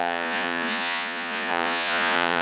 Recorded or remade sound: remade